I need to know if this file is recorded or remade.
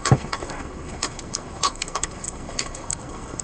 remade